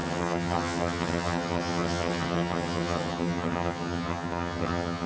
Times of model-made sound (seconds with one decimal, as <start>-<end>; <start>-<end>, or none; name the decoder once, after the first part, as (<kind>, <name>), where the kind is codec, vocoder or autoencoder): 0.0-5.1 (vocoder, HiFi-GAN)